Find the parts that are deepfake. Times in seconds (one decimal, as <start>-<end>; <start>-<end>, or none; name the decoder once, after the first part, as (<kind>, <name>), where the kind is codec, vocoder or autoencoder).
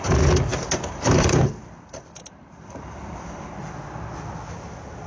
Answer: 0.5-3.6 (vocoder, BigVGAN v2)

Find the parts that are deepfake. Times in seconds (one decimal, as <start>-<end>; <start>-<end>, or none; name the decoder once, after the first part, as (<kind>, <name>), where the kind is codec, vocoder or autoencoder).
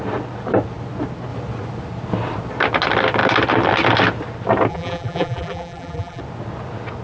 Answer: 4.7-6.2 (vocoder, BigVGAN v2)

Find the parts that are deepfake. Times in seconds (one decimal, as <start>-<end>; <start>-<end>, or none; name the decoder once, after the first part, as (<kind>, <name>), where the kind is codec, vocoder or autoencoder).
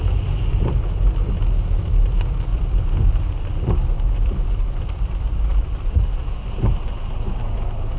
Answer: 2.5-4.6 (vocoder, BigVGAN v2)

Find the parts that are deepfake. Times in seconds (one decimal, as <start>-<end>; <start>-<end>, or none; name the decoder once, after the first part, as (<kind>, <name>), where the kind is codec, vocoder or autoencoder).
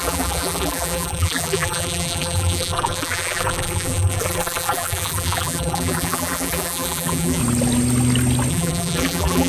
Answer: 0.0-7.4 (vocoder, BigVGAN v2); 8.5-9.5